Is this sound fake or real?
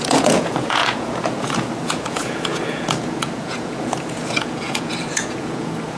fake